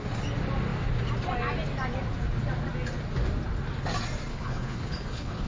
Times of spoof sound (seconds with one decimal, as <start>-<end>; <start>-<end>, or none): 4.3-5.5